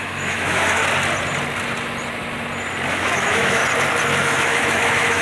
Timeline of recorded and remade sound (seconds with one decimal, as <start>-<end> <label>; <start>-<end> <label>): 0.0-0.8 remade; 0.8-2.9 recorded; 2.9-3.6 remade; 3.6-4.2 recorded; 4.2-5.2 remade